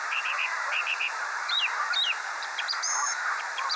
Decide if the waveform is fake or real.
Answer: fake